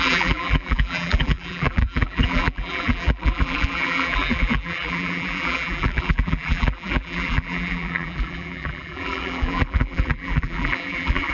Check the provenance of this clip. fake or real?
fake